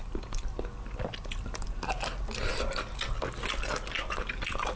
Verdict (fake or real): real